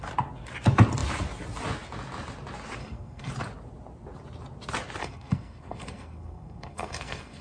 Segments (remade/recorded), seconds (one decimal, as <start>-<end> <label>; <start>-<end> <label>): 0.0-2.8 recorded; 2.8-3.3 remade; 3.3-5.0 recorded; 5.0-7.4 remade